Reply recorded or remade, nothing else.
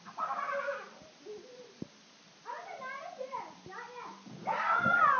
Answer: recorded